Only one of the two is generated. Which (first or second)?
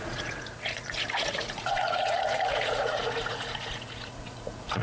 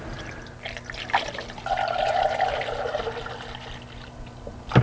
first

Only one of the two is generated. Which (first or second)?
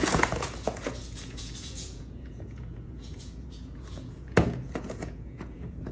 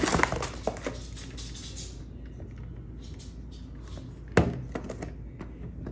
first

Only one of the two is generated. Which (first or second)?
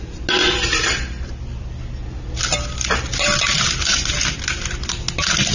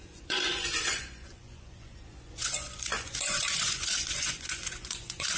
second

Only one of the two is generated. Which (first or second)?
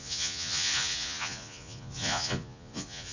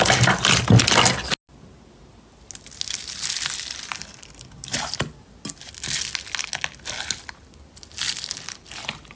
first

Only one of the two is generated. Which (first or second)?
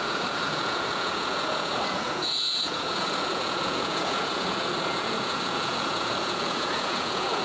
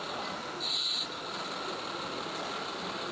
first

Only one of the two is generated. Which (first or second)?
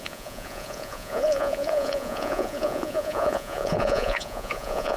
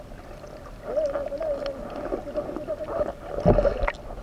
first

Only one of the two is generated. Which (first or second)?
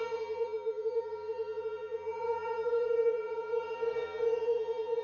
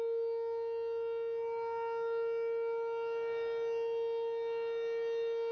first